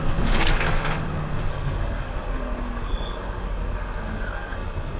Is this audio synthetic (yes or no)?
yes